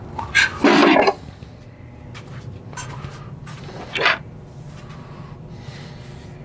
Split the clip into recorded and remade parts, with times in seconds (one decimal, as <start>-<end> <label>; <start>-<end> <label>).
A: 0.0-6.4 recorded